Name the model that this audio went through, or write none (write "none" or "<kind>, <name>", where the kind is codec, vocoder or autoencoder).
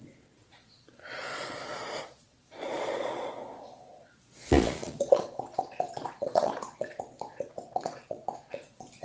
vocoder, Vocos